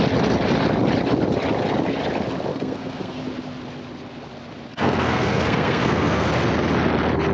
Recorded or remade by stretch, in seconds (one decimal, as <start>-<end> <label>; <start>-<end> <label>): 0.0-2.5 recorded; 2.5-3.2 remade; 3.2-4.7 recorded; 4.7-6.3 remade; 6.3-7.3 recorded